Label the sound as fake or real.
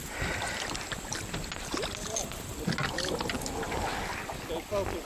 real